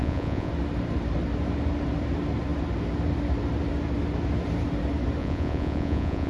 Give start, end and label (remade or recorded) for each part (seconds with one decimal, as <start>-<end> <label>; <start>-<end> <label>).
0.0-0.5 remade; 0.5-5.2 recorded; 5.2-6.3 remade